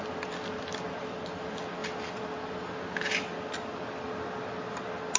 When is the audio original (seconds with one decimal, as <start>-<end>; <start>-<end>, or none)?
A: 0.0-5.2